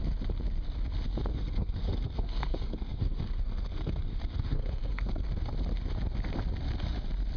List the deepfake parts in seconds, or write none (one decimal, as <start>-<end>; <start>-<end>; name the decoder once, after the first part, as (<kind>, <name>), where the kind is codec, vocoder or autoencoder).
1.3-5.5 (codec, SNAC)